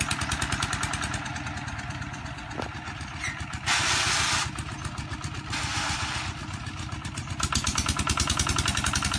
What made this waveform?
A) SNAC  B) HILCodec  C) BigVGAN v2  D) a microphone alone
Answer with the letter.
D